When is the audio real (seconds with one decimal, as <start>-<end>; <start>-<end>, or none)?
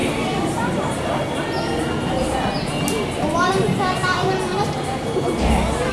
0.0-5.9